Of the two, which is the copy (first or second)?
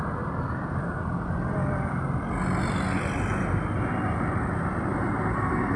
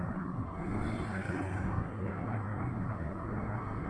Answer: second